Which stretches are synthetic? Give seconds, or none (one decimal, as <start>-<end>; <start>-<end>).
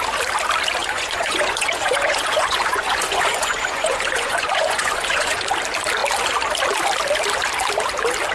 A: 0.8-5.5